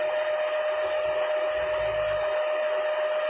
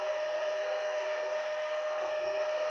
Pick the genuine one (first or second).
first